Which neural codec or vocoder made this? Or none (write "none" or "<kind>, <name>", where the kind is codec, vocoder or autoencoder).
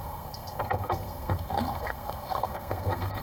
codec, SNAC